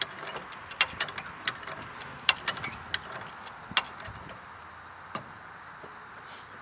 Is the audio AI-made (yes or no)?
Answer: no